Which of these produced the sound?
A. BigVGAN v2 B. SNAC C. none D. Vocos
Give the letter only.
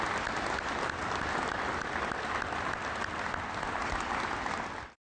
C